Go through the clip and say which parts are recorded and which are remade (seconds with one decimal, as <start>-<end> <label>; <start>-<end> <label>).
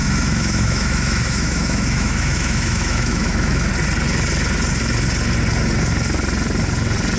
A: 0.0-3.7 remade; 3.7-7.2 recorded